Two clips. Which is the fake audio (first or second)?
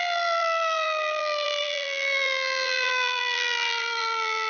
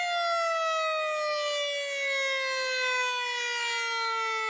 first